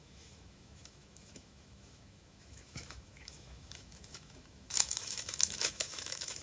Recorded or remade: remade